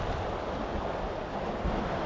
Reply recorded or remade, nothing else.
recorded